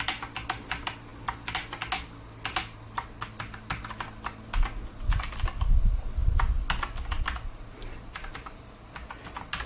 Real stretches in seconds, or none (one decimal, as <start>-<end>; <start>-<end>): 0.0-9.7